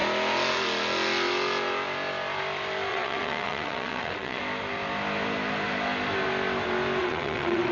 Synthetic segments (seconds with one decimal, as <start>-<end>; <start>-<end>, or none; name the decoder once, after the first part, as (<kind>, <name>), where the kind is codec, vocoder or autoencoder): 2.9-4.4 (vocoder, WaveNeXt); 7.0-7.7